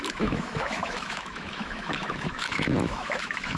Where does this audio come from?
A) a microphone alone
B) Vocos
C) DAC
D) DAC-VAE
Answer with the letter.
D